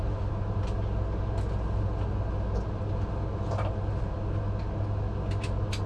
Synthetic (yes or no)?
no